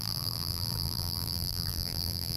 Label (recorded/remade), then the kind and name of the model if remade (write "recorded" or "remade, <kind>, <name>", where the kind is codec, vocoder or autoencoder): remade, vocoder, BigVGAN v2